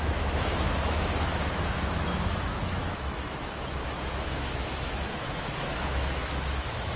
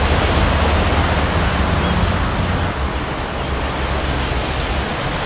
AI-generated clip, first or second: first